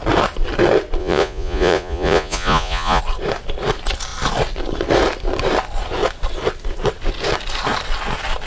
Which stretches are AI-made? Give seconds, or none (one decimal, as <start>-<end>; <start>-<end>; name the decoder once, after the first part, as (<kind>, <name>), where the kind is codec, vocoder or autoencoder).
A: 1.0-3.0 (vocoder, Vocos)